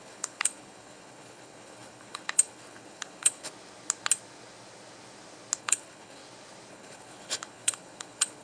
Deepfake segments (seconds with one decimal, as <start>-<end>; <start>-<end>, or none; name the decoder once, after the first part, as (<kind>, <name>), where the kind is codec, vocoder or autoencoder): 0.0-3.5 (codec, HILCodec); 5.6-6.2; 6.7-8.4